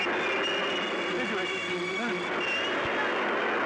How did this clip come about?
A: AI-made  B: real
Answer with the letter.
B